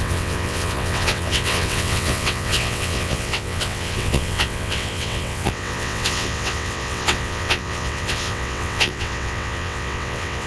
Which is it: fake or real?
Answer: fake